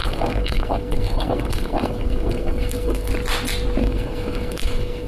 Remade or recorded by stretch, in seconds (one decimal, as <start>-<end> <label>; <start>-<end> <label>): 0.0-3.1 remade; 3.1-3.8 recorded; 3.8-5.1 remade